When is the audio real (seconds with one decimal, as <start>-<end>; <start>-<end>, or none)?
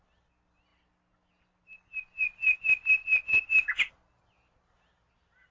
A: 0.0-5.5